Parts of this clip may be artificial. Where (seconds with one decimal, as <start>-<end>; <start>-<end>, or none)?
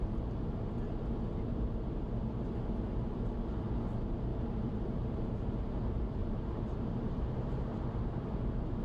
4.3-5.3; 6.2-8.0